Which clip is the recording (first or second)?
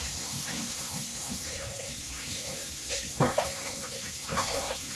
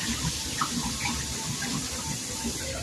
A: second